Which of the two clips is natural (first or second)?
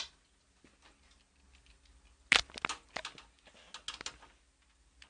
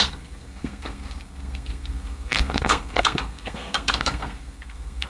first